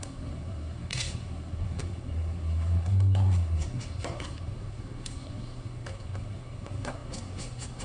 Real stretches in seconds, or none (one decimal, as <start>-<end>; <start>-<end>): none